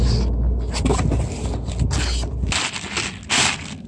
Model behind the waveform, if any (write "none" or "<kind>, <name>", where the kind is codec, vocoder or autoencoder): none